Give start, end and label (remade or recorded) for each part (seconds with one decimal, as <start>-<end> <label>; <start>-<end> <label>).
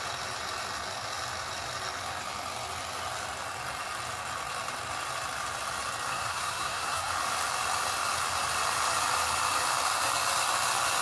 0.0-6.1 recorded; 6.1-7.1 remade; 7.1-11.0 recorded